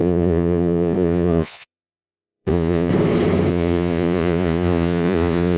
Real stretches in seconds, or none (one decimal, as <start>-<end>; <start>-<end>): 2.9-3.5